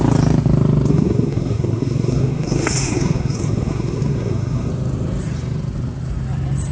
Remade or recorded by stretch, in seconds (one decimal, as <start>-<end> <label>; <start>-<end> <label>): 0.0-0.9 recorded; 0.9-4.7 remade; 4.7-6.7 recorded

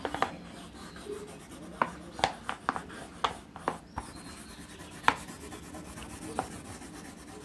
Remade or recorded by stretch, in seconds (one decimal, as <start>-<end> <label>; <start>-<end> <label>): 0.0-7.4 recorded

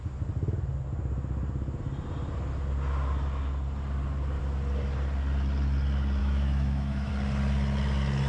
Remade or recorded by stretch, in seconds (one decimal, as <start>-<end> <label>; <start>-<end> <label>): 0.0-6.2 recorded; 6.2-7.1 remade; 7.1-8.3 recorded

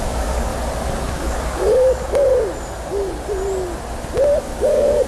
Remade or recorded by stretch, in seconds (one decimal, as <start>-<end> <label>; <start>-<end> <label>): 0.0-0.5 remade; 0.5-1.1 recorded; 1.1-2.3 remade; 2.3-4.4 recorded; 4.4-5.1 remade

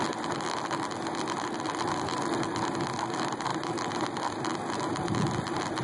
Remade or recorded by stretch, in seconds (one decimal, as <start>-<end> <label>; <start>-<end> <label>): 0.0-5.8 recorded

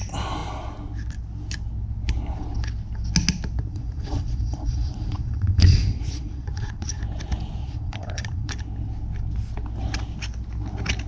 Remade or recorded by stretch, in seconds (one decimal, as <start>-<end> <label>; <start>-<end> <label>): 0.0-3.7 recorded; 3.7-7.0 remade; 7.0-7.6 recorded; 7.6-8.5 remade; 8.5-11.1 recorded